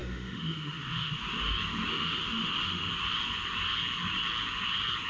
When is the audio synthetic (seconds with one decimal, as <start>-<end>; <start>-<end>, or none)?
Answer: 0.0-1.1; 1.9-2.9